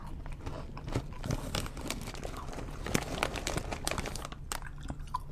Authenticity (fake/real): real